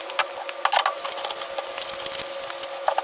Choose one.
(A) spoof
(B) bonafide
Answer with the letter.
B